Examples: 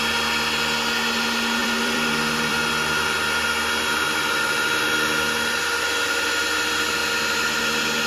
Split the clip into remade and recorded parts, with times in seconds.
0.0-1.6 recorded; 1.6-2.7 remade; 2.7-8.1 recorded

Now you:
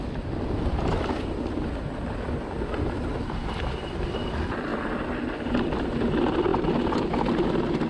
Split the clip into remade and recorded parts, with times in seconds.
0.0-7.9 recorded

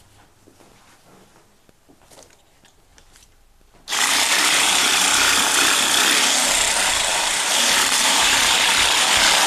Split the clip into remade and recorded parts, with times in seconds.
0.0-2.9 recorded; 2.9-5.0 remade; 5.0-6.4 recorded; 6.4-9.1 remade; 9.1-9.5 recorded